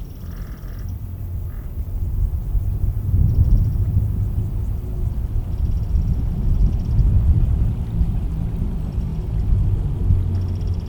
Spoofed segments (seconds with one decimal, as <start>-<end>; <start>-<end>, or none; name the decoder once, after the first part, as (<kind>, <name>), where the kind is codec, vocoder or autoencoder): 0.0-6.6 (vocoder, BigVGAN v2); 7.2-9.1